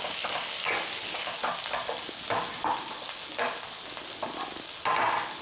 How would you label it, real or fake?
real